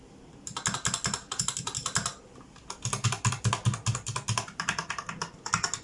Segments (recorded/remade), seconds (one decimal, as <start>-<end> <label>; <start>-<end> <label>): 0.0-5.8 recorded